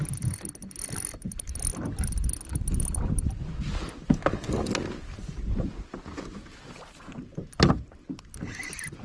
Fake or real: real